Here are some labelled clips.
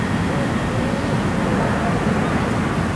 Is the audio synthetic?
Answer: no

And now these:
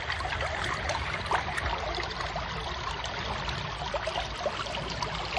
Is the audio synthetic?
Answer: no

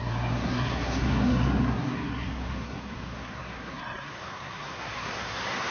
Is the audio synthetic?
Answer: yes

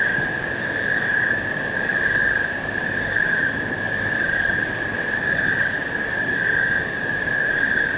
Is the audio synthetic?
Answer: yes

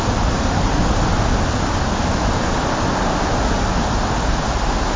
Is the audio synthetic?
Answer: no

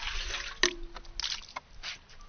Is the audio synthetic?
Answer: no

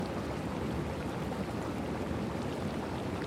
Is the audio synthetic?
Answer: no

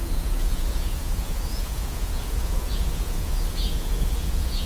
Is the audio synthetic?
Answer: yes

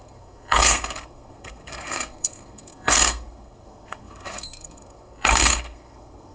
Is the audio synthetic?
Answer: yes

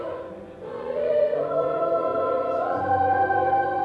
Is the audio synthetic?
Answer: yes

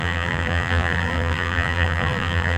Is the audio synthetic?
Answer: yes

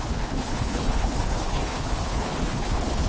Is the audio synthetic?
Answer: yes